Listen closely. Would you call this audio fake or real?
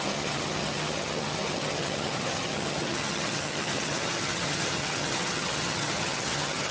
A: fake